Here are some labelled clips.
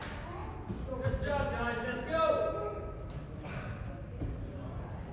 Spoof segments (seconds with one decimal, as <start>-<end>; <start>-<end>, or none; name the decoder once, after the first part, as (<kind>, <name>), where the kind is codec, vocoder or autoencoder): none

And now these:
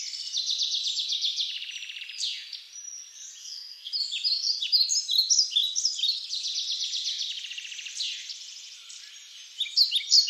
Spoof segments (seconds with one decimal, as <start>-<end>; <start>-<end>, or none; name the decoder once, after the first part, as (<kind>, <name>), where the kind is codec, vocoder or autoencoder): 3.4-3.9 (codec, SNAC)

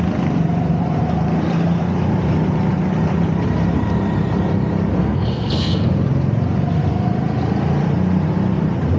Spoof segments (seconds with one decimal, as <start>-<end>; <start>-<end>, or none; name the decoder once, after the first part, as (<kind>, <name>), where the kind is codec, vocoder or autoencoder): 5.0-5.9 (codec, SNAC)